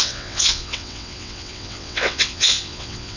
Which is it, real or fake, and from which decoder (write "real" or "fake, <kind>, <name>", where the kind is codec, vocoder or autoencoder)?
fake, vocoder, WaveNeXt